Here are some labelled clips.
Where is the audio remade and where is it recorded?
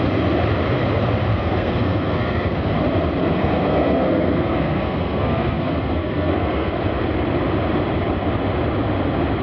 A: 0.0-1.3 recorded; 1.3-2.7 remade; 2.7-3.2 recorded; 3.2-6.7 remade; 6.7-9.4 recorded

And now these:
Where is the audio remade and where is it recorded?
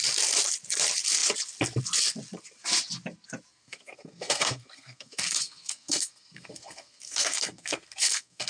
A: 0.0-3.5 recorded; 3.5-8.5 remade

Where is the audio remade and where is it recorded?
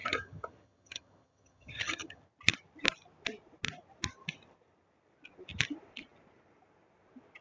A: 0.0-2.2 remade; 2.2-7.4 recorded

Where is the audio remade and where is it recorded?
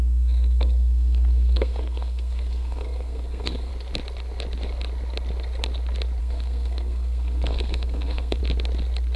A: 0.0-3.7 remade; 3.7-6.2 recorded; 6.2-8.4 remade; 8.4-9.2 recorded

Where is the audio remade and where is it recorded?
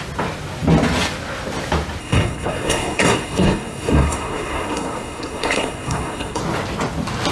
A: 0.0-2.0 recorded; 2.0-6.4 remade; 6.4-7.3 recorded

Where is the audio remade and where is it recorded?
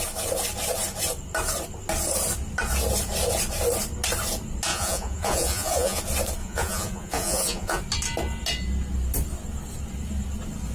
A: 0.0-4.7 recorded; 4.7-6.0 remade; 6.0-6.4 recorded; 6.4-7.8 remade; 7.8-10.7 recorded